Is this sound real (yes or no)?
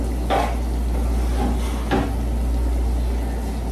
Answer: yes